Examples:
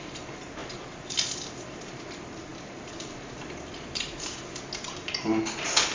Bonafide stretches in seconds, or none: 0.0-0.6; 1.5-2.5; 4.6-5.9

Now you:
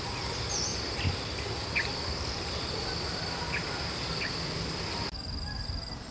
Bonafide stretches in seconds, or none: 0.0-6.1

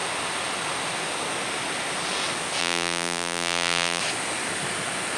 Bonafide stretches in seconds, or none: 0.0-2.6; 4.0-5.2

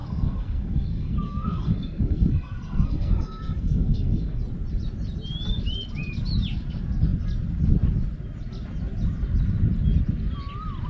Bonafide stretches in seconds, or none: 4.4-10.9

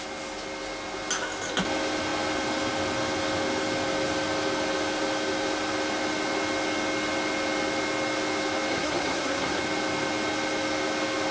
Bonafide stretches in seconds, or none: 0.0-8.7; 9.6-11.3